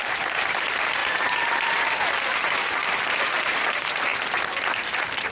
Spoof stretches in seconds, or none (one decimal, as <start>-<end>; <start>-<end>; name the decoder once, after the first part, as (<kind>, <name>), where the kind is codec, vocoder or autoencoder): 0.0-4.1 (vocoder, BigVGAN v2); 4.7-5.3